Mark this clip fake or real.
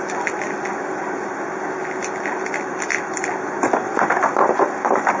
real